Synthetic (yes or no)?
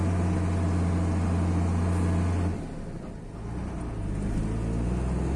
no